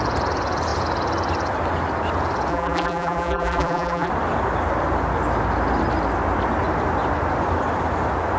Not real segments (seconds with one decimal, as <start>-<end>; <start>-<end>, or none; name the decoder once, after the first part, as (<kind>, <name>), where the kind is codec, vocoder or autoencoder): 2.5-4.1 (vocoder, BigVGAN v2)